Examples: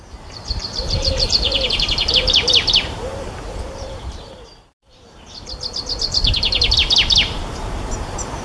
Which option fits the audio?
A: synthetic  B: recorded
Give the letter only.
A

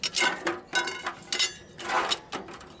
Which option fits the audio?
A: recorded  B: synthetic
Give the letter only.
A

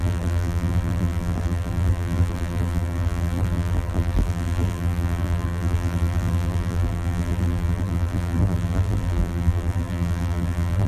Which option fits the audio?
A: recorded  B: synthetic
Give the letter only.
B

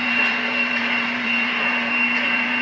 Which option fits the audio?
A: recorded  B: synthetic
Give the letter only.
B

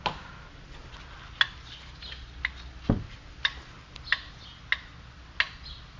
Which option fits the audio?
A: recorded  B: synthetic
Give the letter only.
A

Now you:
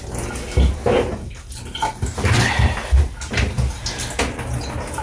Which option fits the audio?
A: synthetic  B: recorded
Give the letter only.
B